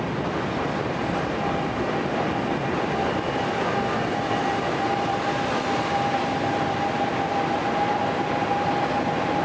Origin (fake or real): fake